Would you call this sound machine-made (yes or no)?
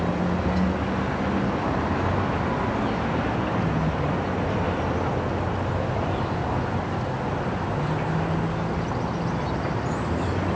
no